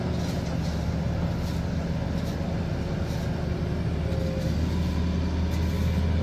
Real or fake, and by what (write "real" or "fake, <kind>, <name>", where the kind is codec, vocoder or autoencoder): real